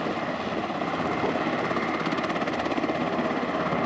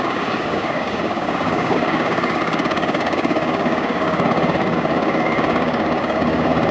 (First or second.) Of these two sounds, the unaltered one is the first